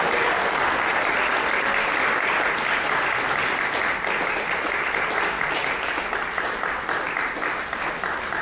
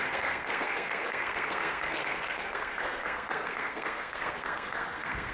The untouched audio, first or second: first